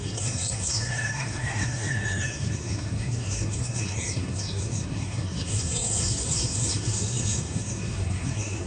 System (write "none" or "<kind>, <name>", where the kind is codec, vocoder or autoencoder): codec, SNAC